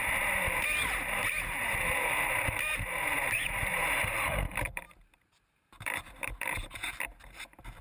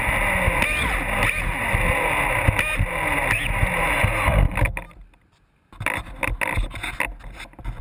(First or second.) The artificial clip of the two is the first